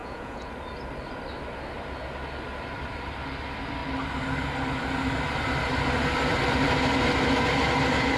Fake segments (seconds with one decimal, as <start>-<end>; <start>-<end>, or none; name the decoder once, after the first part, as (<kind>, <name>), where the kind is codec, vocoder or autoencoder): 0.0-0.5 (vocoder, Vocos)